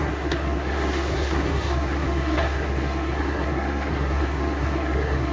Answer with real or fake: fake